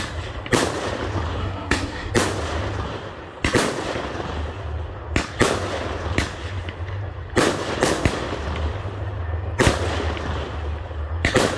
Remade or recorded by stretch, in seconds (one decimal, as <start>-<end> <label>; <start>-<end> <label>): 0.0-1.4 recorded; 1.4-2.1 remade; 2.1-11.6 recorded